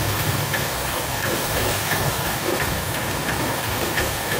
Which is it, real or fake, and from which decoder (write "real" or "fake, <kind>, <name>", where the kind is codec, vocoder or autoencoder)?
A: fake, codec, DAC